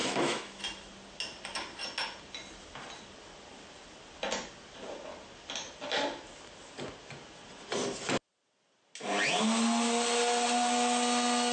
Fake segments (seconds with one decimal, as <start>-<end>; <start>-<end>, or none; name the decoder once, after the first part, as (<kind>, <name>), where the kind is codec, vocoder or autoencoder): 0.0-0.6 (autoencoder, DAC-VAE)